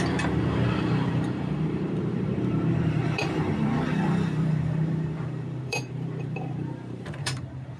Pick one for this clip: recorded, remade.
remade